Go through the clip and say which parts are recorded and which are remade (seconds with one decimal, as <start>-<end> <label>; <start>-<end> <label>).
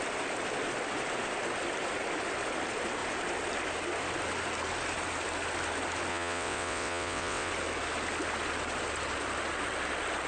0.0-6.1 recorded; 6.1-7.5 remade; 7.5-10.3 recorded